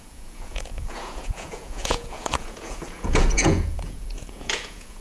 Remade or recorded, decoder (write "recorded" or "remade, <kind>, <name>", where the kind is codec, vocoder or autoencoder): remade, vocoder, Vocos